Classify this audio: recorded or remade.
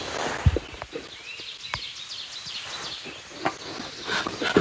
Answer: recorded